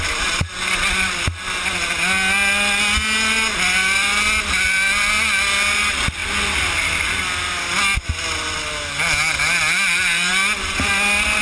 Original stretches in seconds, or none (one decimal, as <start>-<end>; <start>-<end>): 0.0-11.4